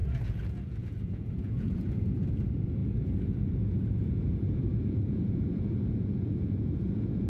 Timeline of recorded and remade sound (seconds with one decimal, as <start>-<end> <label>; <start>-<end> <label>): 0.0-7.3 remade